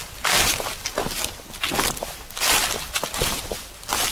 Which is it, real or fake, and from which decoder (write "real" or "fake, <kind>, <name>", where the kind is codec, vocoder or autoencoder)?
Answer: real